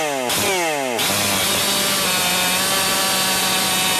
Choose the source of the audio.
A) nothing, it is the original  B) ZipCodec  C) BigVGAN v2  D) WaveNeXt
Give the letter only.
A